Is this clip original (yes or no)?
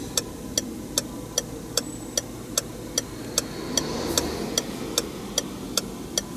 yes